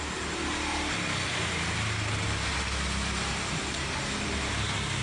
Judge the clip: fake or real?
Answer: real